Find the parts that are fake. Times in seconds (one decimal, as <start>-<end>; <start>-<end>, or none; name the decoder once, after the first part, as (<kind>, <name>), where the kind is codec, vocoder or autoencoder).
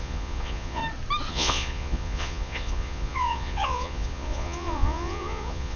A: 0.0-0.8 (vocoder, Vocos); 1.3-5.8